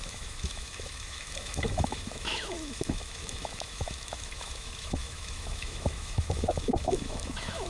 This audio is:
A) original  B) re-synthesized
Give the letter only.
B